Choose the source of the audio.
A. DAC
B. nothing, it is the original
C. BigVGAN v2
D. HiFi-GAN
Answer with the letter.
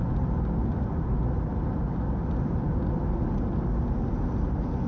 B